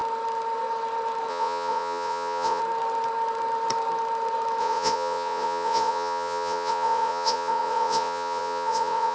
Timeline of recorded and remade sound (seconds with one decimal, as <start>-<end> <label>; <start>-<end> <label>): 0.0-1.3 recorded; 1.3-2.6 remade; 2.6-4.6 recorded; 4.6-9.1 remade